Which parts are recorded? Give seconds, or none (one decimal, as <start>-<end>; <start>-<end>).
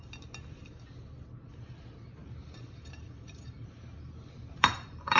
0.0-2.2